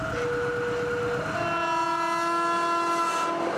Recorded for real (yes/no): yes